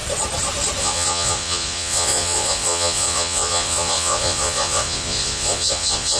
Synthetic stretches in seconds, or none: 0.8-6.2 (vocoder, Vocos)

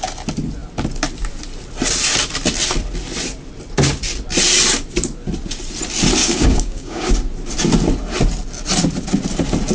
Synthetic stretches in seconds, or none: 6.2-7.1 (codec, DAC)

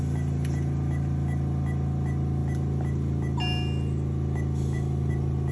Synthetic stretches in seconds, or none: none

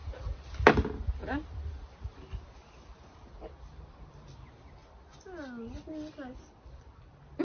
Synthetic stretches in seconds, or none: none

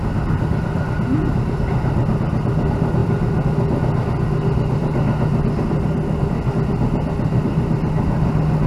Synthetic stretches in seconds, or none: none

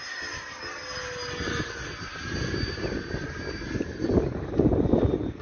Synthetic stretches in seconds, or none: none

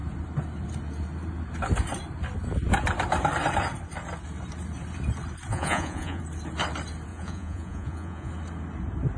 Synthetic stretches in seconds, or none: 5.5-6.2 (vocoder, Vocos); 7.1-8.3

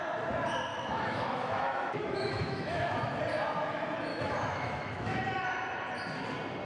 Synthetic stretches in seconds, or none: 0.7-3.2 (autoencoder, DAC-VAE); 4.1-5.2